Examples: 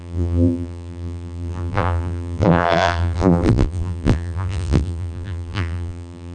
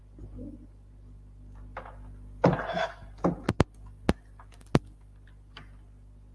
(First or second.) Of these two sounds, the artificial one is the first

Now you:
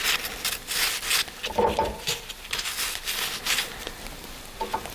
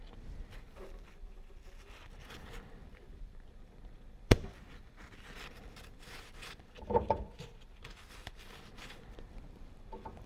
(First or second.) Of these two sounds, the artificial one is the second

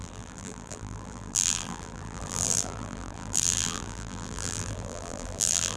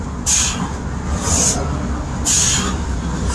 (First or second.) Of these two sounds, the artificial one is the first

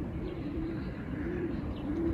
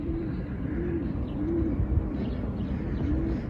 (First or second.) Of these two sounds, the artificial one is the first